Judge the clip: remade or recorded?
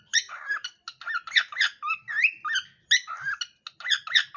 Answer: recorded